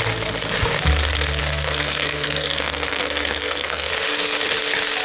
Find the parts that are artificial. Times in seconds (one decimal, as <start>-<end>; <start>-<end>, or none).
1.4-3.9